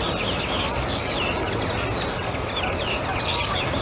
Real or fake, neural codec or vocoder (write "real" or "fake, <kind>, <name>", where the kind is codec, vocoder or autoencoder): real